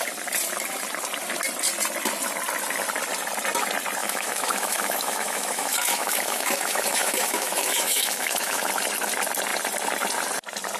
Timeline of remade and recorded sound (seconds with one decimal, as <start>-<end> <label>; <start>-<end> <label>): 0.0-4.0 recorded; 4.0-8.7 remade; 8.7-10.8 recorded